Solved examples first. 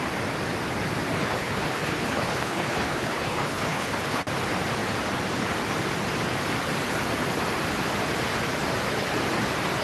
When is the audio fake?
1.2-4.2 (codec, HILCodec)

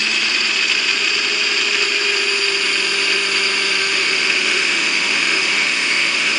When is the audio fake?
3.8-6.4 (autoencoder, DAC-VAE)

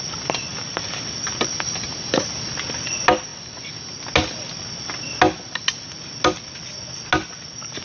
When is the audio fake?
none